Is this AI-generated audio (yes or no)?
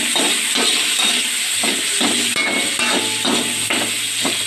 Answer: no